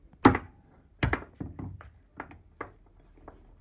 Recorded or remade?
recorded